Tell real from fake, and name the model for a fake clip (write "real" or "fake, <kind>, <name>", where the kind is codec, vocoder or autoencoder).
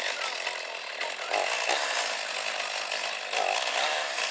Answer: real